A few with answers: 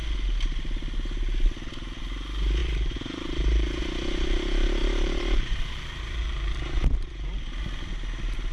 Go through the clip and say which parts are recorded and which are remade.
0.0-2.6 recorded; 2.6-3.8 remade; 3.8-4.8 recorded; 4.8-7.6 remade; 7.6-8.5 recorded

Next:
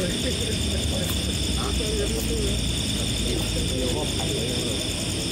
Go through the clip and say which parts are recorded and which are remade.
0.0-5.3 recorded

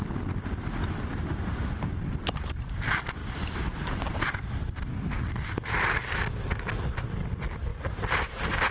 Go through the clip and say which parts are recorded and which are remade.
0.0-3.2 remade; 3.2-5.0 recorded; 5.0-7.7 remade; 7.7-8.7 recorded

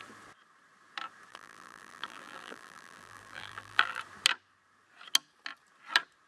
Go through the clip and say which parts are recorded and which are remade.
0.0-1.3 recorded; 1.3-4.0 remade; 4.0-6.3 recorded

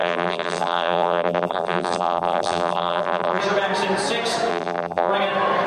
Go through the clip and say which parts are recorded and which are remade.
0.0-3.4 remade; 3.4-4.5 recorded; 4.5-5.1 remade; 5.1-5.7 recorded

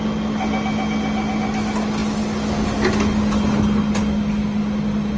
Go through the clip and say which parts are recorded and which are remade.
0.0-5.2 recorded